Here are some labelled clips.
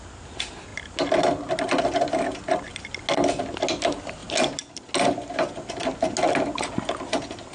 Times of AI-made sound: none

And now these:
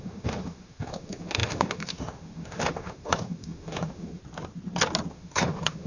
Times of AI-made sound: 0.0-4.2; 5.1-5.9

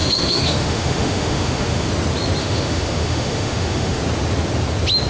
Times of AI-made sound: 0.0-1.9; 2.4-4.0

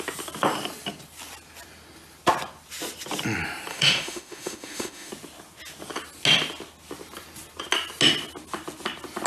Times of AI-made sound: 3.7-5.1

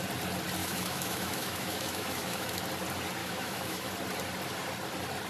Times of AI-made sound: 0.6-2.6; 3.2-3.9

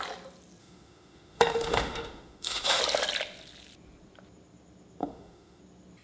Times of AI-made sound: 0.6-2.8; 5.0-5.6

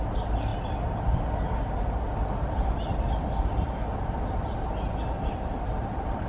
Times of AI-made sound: none